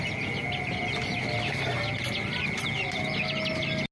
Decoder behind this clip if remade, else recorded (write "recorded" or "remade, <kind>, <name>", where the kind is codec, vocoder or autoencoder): recorded